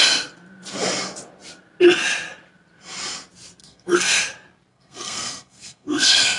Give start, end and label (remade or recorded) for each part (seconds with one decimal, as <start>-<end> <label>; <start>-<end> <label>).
0.0-3.6 recorded; 3.6-4.2 remade; 4.2-4.7 recorded; 4.7-6.4 remade